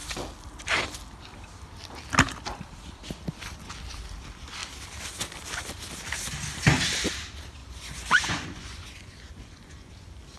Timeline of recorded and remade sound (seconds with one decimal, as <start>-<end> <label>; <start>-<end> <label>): 0.0-7.6 recorded; 7.6-9.9 remade; 9.9-10.4 recorded